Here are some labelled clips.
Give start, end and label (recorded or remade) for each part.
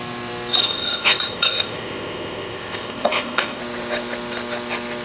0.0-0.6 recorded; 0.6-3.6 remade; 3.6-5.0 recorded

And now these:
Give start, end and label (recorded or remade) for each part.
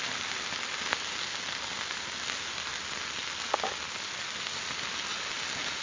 0.0-5.8 recorded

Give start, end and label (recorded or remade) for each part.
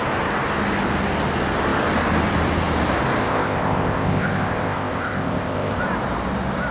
0.0-3.2 recorded; 3.2-5.8 remade; 5.8-6.7 recorded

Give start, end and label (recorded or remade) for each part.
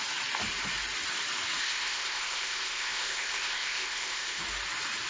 0.0-1.6 recorded; 1.6-4.4 remade; 4.4-5.1 recorded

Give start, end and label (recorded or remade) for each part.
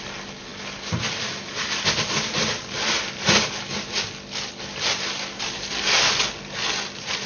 0.0-7.3 recorded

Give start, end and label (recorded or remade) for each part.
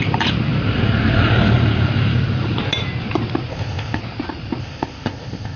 0.0-3.5 recorded; 3.5-4.0 remade; 4.0-4.6 recorded; 4.6-5.6 remade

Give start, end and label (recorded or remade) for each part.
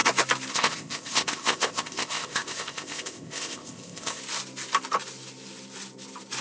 0.0-0.5 recorded; 0.5-4.2 remade; 4.2-6.4 recorded